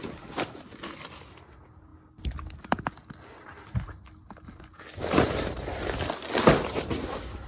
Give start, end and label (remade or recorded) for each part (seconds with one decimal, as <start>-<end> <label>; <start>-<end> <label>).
0.0-7.5 recorded